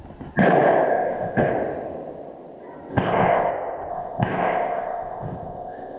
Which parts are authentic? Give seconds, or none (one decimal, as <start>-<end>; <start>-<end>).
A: 0.0-0.9; 1.5-2.9; 3.5-3.9